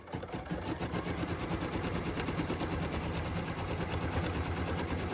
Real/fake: real